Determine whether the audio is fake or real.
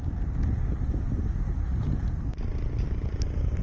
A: real